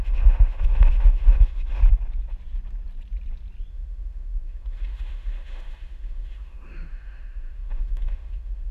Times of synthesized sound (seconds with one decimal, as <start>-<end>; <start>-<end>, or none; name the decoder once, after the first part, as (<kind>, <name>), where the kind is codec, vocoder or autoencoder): 0.0-1.8 (autoencoder, DAC-VAE); 3.7-8.7

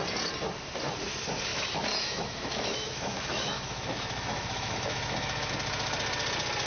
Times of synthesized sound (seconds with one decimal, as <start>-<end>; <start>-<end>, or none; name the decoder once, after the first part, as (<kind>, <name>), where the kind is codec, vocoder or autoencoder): 1.5-5.5 (autoencoder, DAC-VAE)

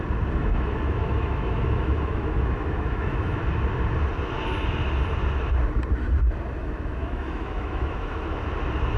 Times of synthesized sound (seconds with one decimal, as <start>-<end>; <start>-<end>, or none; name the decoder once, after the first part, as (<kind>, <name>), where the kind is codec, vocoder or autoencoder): 0.4-3.4 (autoencoder, DAC-VAE); 6.6-8.4

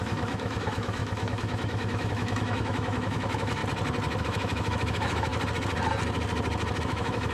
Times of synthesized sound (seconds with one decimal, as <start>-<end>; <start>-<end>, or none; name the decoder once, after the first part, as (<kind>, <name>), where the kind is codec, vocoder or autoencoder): 0.0-3.6 (autoencoder, DAC-VAE); 4.2-5.3; 6.8-7.3

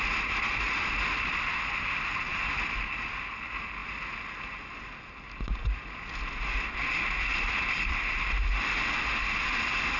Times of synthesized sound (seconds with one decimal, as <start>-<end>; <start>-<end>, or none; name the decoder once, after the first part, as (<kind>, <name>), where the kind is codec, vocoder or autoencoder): none

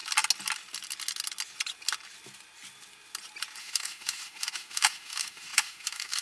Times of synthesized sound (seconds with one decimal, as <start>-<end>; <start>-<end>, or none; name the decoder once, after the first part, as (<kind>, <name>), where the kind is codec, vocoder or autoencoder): 3.6-6.2 (autoencoder, DAC-VAE)

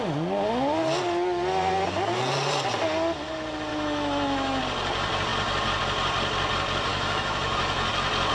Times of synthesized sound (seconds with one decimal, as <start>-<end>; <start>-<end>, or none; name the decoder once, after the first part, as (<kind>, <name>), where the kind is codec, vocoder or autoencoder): 3.7-4.6 (autoencoder, DAC-VAE); 6.9-7.9

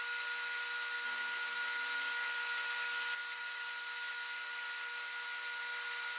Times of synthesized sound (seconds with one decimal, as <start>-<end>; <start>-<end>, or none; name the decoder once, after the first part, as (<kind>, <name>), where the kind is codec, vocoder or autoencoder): none